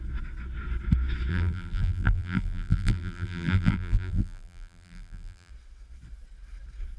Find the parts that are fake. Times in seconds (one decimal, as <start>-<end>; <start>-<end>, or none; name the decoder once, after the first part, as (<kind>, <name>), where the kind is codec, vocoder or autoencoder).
1.3-5.5 (vocoder, BigVGAN v2)